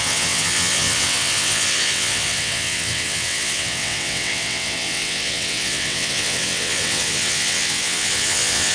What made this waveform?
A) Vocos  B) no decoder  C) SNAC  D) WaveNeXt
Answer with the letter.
D